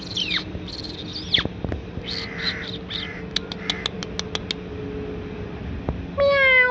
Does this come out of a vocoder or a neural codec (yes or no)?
no